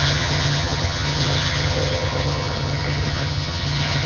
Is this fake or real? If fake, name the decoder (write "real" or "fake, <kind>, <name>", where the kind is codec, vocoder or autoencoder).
fake, vocoder, HiFi-GAN